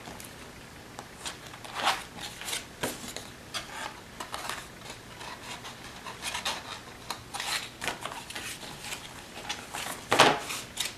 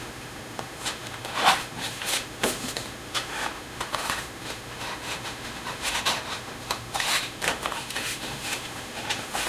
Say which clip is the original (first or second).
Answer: first